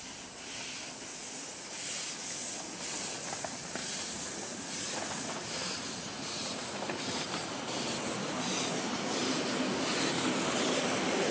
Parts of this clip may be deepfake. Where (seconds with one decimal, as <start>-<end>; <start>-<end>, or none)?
1.1-2.1; 3.8-7.0